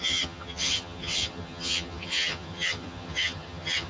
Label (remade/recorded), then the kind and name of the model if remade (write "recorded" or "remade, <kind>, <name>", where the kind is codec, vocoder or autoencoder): remade, vocoder, HiFi-GAN